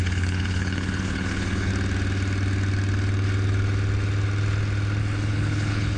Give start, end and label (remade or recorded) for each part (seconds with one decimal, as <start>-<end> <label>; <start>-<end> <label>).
0.0-1.7 remade; 1.7-5.0 recorded; 5.0-6.0 remade